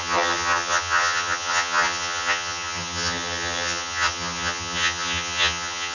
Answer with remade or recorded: remade